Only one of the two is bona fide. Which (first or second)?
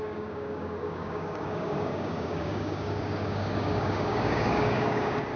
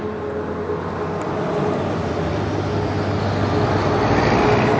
second